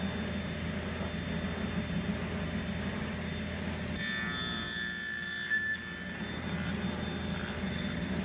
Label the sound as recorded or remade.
recorded